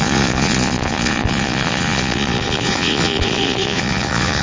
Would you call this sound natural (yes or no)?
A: no